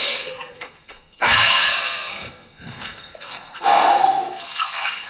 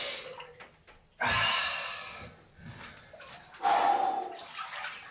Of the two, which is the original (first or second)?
second